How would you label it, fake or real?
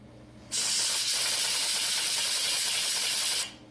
real